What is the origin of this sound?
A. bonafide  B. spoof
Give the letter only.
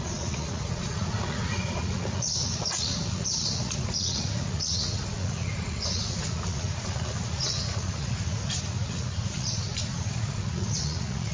B